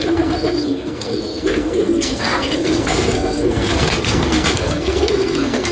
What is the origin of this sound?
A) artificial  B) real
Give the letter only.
A